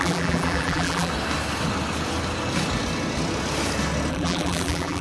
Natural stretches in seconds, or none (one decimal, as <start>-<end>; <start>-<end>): 1.1-4.1